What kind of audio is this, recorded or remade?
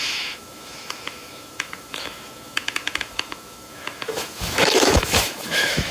remade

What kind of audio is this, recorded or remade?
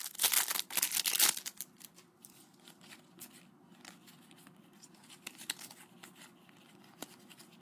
recorded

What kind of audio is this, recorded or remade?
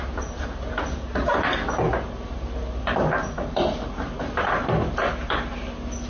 recorded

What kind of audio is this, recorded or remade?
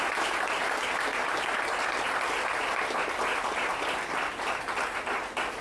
recorded